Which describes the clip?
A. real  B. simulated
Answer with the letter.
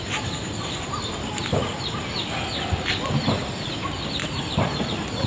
A